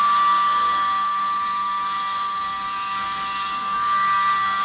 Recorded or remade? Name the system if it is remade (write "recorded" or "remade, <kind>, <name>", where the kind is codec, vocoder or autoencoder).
remade, codec, SNAC